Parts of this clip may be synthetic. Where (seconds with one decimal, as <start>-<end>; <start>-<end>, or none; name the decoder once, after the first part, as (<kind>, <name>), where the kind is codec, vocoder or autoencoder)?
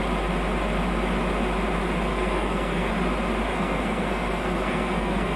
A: 2.1-2.9 (codec, SNAC); 3.5-5.4